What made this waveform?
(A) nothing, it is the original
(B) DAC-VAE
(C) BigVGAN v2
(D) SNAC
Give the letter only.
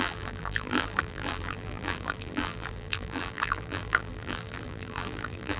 C